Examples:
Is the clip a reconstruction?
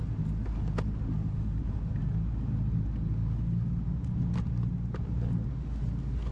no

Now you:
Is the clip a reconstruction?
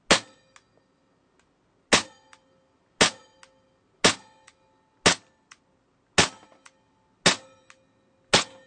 no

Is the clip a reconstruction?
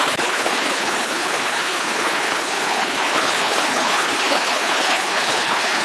yes